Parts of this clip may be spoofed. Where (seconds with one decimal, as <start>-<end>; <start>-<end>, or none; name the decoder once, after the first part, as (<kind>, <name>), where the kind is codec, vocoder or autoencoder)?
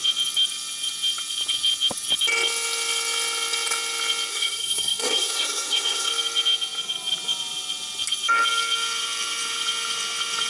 4.3-6.1 (codec, SNAC)